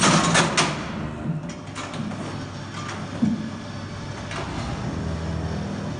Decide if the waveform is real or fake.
real